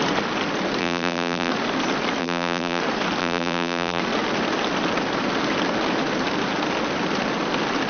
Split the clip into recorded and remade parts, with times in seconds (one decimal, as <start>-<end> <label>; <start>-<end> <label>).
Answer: 0.0-0.8 recorded; 0.8-1.5 remade; 1.5-2.2 recorded; 2.2-2.8 remade; 2.8-3.2 recorded; 3.2-4.0 remade; 4.0-7.9 recorded